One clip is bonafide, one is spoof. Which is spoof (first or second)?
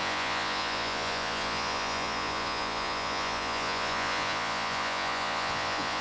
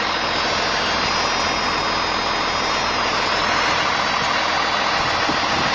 first